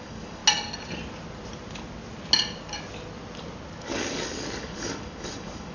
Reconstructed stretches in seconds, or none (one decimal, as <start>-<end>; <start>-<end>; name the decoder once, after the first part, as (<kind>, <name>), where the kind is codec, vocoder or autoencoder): 0.0-0.4 (codec, DAC); 3.8-5.7